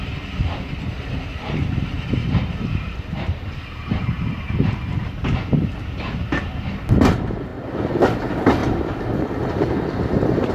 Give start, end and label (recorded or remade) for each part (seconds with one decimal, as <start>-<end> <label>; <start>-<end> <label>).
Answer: 0.0-10.5 remade